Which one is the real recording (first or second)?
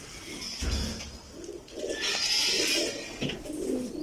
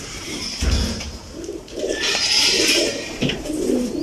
first